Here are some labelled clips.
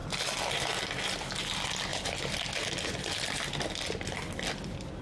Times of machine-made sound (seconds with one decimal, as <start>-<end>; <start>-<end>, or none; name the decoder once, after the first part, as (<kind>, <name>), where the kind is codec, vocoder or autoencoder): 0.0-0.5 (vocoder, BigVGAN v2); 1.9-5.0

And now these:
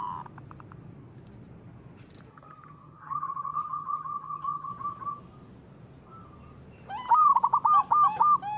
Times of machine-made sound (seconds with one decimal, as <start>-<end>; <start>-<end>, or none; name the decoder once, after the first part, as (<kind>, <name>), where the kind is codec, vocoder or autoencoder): 2.3-4.7 (vocoder, HiFi-GAN)

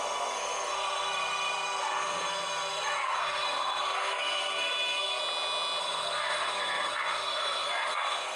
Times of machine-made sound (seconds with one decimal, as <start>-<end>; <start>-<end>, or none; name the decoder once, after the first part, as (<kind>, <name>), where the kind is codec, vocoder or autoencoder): 0.0-5.2 (codec, SNAC); 5.8-8.3